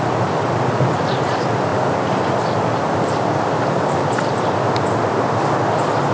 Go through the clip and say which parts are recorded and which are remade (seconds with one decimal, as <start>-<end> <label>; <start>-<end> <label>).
0.0-6.1 recorded